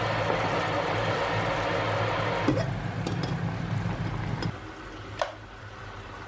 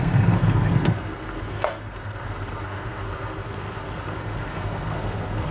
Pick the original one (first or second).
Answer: first